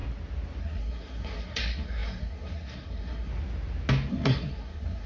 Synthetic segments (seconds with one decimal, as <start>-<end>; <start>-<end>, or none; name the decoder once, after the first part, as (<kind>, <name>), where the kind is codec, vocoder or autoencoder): 0.6-3.3 (codec, SNAC); 4.1-5.1